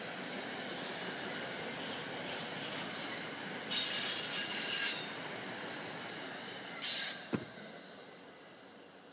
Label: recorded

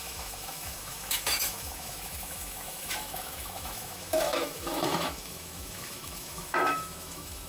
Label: remade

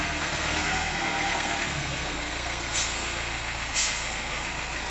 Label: remade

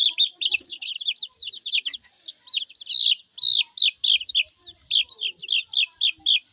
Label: recorded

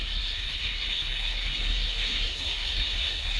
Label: remade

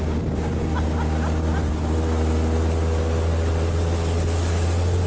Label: recorded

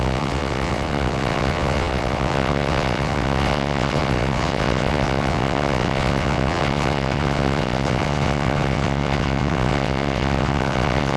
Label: remade